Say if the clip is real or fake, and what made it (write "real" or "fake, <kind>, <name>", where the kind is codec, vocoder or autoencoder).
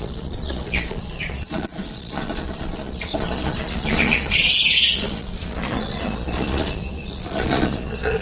fake, vocoder, Vocos